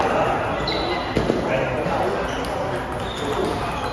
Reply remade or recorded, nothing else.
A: recorded